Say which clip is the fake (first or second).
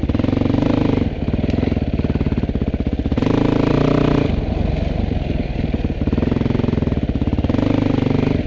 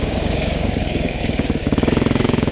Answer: second